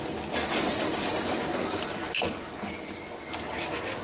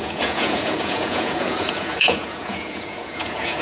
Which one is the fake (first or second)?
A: second